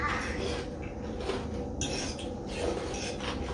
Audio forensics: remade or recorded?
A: recorded